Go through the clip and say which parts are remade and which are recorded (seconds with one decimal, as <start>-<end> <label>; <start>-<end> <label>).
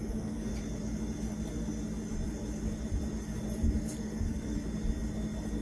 0.0-0.5 remade; 0.5-3.8 recorded; 3.8-4.6 remade; 4.6-5.6 recorded